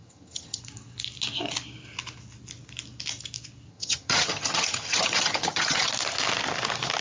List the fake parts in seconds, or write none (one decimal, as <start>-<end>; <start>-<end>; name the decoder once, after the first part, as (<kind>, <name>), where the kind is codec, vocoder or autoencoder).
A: 0.0-0.6 (vocoder, HiFi-GAN); 3.7-5.9